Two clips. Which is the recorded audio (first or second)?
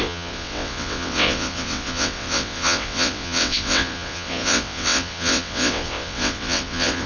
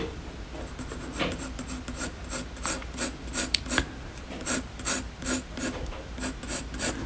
second